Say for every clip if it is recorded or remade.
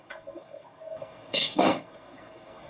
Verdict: remade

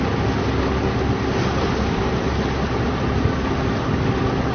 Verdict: recorded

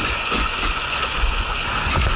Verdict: remade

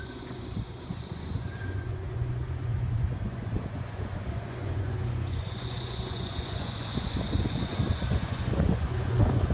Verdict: remade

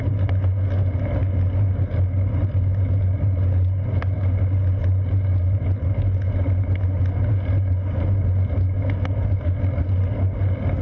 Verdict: recorded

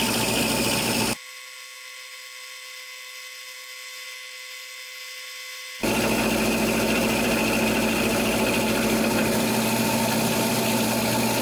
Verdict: recorded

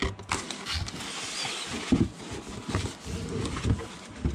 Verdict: recorded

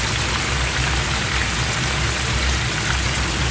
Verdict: recorded